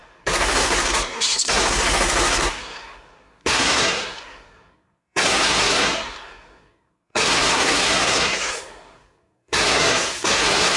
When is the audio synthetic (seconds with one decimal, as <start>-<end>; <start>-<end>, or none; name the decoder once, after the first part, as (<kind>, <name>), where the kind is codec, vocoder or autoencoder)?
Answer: 0.0-10.8 (codec, SNAC)